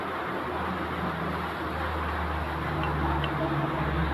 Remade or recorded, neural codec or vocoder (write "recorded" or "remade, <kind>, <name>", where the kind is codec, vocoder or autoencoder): recorded